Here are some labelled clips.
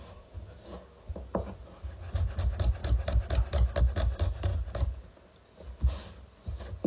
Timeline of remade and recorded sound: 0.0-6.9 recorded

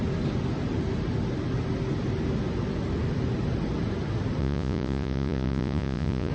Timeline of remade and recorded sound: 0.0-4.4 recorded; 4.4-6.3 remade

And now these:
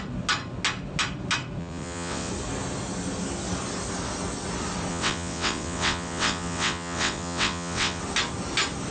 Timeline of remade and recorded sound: 0.0-1.6 recorded; 1.6-2.3 remade; 2.3-4.9 recorded; 4.9-8.0 remade; 8.0-8.9 recorded

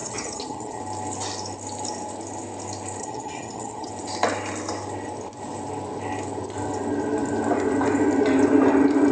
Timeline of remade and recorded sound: 0.0-0.8 remade; 0.8-3.0 recorded; 3.0-3.9 remade; 3.9-9.1 recorded

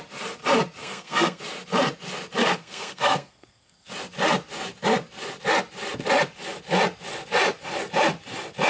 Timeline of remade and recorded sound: 0.0-0.8 recorded; 0.8-1.4 remade; 1.4-2.4 recorded; 2.4-3.9 remade; 3.9-8.7 recorded

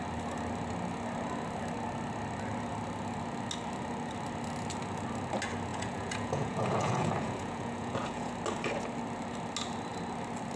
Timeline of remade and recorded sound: 0.0-5.7 recorded; 5.7-8.3 remade; 8.3-10.6 recorded